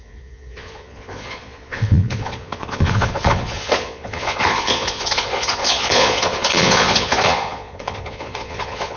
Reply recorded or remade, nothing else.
remade